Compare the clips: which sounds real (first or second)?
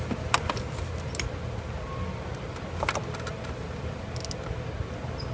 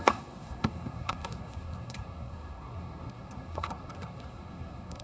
first